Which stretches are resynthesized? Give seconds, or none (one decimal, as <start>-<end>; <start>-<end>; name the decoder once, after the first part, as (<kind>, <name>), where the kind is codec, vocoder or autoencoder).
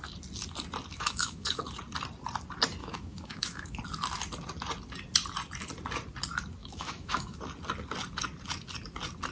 0.9-1.6 (autoencoder, DAC-VAE); 2.8-3.8; 6.6-7.4